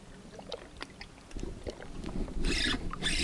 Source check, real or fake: real